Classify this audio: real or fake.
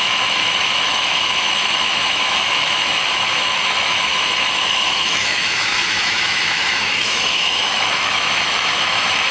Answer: fake